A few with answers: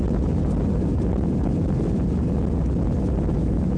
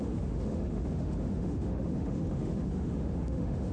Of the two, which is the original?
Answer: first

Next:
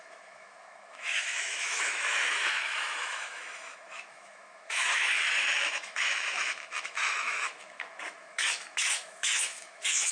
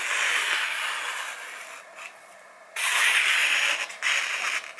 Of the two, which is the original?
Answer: second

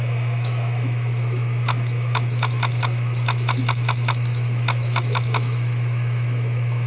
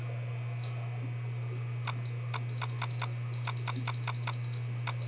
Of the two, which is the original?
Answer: second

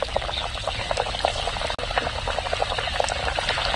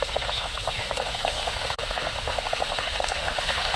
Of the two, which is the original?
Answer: first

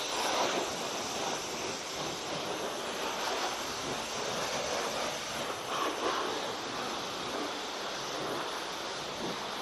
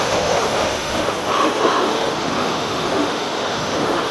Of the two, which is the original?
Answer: first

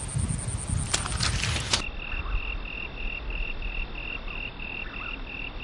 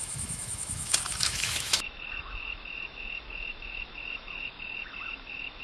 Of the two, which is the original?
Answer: first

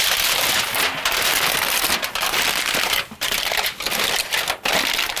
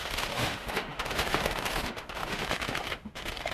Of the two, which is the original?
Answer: first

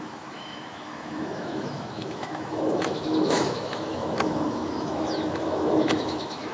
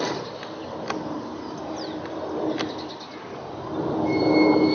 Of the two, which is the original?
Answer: second